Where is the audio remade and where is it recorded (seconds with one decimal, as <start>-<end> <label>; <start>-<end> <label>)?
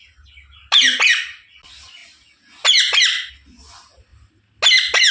0.0-5.1 recorded